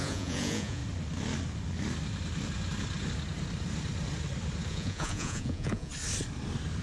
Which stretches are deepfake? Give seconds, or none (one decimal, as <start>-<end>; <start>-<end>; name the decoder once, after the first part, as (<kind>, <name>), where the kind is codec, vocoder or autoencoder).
0.0-0.8 (vocoder, Vocos); 4.7-5.9